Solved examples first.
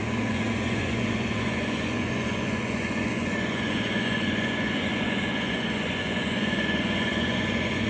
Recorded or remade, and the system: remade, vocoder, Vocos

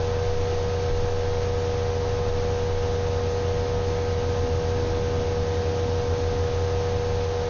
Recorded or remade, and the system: recorded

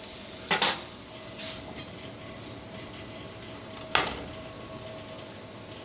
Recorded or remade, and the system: recorded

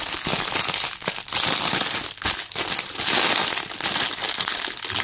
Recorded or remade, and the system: recorded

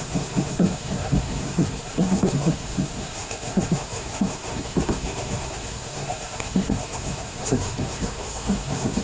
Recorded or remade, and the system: remade, codec, SNAC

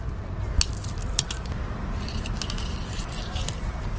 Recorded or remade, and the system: recorded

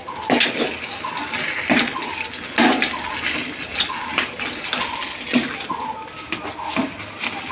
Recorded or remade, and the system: recorded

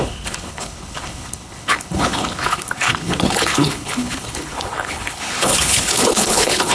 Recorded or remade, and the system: remade, codec, HILCodec